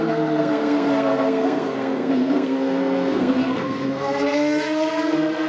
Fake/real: fake